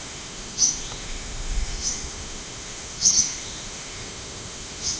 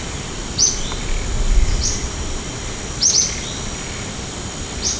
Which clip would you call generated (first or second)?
first